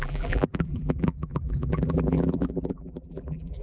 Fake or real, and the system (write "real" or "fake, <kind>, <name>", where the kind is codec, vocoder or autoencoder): fake, vocoder, BigVGAN v2